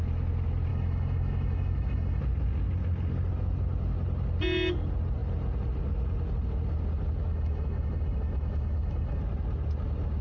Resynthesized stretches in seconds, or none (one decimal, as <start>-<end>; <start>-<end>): 0.7-2.2; 7.3-9.2